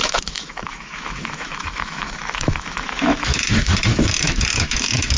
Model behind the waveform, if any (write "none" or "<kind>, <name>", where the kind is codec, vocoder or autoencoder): autoencoder, DAC-VAE